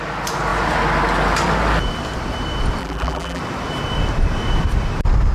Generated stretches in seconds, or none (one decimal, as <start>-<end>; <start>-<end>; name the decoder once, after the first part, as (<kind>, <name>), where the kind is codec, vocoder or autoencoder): 2.8-3.4 (vocoder, BigVGAN v2)